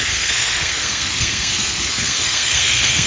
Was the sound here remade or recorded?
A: remade